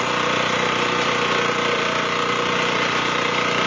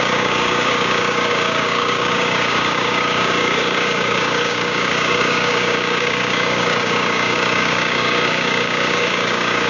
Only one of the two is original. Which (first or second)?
first